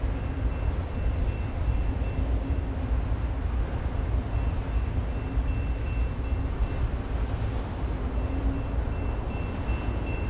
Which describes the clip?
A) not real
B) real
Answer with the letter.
B